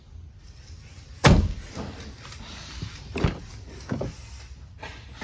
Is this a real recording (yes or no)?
yes